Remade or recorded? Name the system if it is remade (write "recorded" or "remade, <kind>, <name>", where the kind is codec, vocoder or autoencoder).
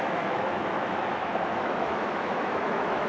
remade, autoencoder, DAC-VAE